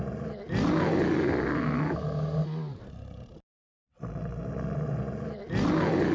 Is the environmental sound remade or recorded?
recorded